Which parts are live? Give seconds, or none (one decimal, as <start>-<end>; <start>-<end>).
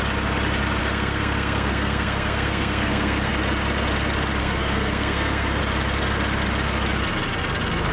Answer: 0.0-0.8; 3.3-4.4; 5.6-7.9